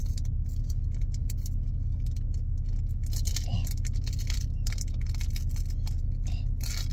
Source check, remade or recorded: recorded